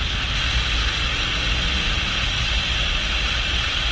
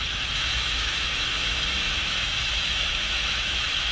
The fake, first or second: second